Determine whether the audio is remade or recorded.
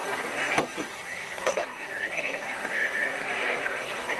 remade